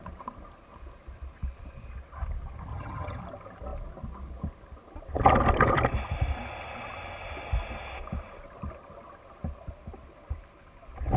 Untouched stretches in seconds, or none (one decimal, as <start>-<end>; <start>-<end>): 0.0-2.7; 3.2-11.2